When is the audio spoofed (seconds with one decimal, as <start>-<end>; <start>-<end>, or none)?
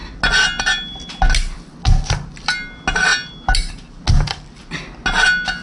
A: none